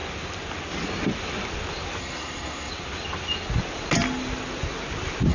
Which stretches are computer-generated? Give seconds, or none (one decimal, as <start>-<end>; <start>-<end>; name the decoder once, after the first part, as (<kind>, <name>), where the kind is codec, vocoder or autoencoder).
2.0-2.7 (codec, SNAC)